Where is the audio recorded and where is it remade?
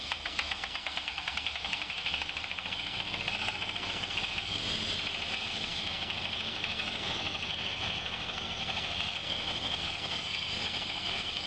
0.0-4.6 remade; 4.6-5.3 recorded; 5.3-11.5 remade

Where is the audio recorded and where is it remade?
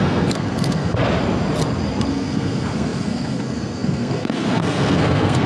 0.0-1.0 remade; 1.0-2.1 recorded; 2.1-5.5 remade